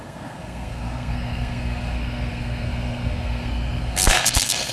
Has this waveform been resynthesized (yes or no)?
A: yes